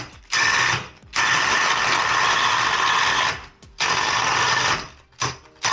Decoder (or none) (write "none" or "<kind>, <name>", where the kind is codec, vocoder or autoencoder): none